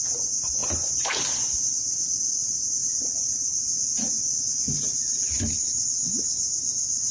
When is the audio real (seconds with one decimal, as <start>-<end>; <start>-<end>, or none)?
0.0-7.1